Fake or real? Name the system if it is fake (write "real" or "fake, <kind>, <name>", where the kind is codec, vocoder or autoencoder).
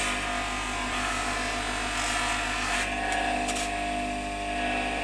real